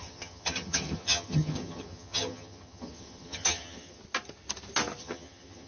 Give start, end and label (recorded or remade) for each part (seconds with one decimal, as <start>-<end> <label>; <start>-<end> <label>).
0.0-4.0 remade; 4.0-5.0 recorded; 5.0-5.7 remade